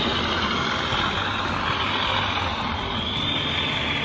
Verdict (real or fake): real